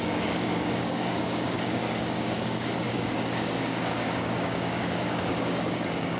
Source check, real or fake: fake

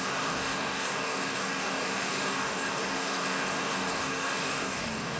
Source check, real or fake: fake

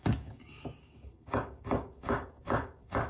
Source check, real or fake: fake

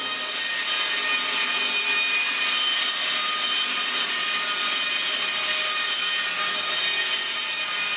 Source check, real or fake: real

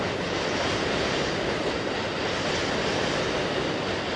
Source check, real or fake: real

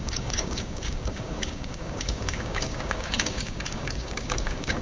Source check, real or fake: fake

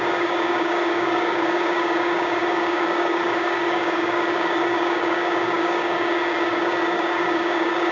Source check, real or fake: fake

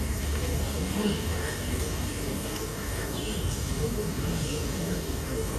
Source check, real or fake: fake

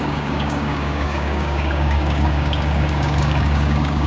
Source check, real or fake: fake